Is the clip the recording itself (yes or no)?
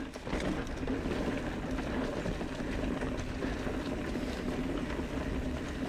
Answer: yes